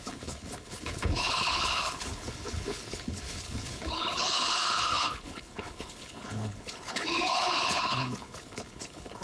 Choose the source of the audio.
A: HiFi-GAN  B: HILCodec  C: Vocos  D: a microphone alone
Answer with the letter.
B